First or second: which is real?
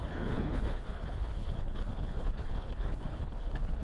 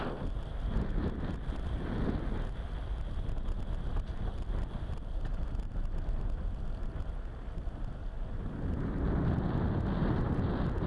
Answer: second